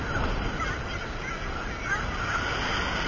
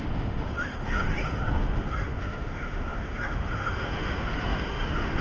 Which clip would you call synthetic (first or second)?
second